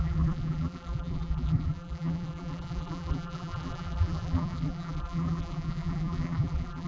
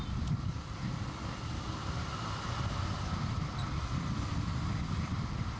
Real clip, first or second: second